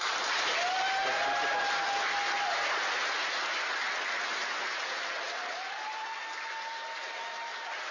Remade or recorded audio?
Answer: recorded